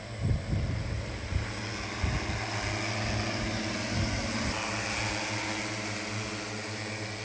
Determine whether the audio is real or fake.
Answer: real